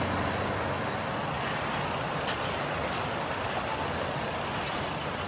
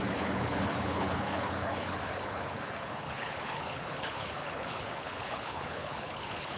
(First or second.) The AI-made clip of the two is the second